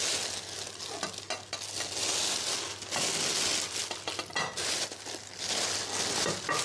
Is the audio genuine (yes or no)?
yes